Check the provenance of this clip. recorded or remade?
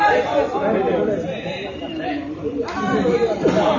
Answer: recorded